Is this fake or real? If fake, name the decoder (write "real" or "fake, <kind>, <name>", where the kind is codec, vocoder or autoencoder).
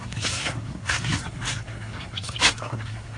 fake, codec, SNAC